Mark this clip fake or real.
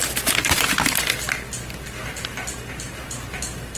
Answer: real